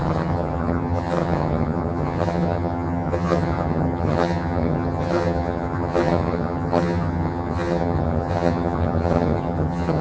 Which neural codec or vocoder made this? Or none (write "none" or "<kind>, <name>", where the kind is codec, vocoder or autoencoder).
vocoder, HiFi-GAN